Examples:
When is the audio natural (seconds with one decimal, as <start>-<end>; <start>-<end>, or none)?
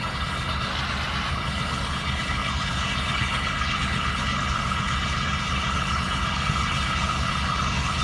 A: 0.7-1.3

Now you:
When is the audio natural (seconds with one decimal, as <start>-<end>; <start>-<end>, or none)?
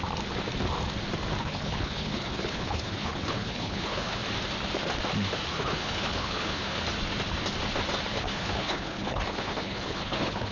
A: 0.0-1.4; 4.2-5.5; 6.8-8.1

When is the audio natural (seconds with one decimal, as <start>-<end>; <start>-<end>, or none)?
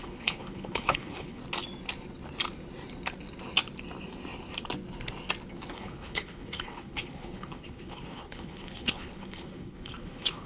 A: 1.4-5.7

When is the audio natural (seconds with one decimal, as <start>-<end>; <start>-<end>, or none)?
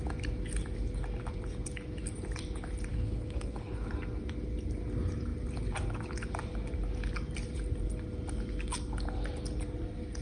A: 0.0-2.9; 3.9-10.2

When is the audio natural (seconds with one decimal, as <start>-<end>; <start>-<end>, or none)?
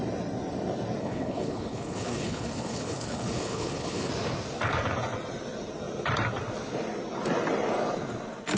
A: 0.0-1.0; 4.1-8.6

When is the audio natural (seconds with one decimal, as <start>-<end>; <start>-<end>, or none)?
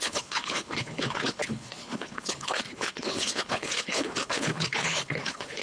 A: none